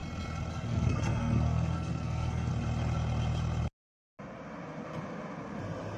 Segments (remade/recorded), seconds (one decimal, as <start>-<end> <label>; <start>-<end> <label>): 0.0-0.5 recorded; 0.5-2.5 remade; 2.5-6.0 recorded